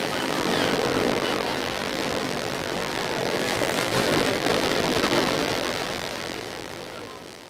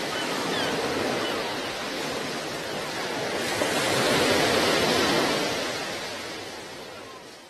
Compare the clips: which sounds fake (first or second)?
first